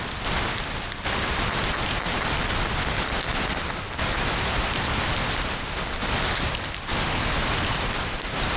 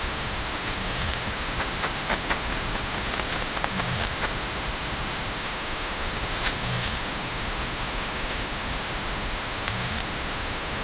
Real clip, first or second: first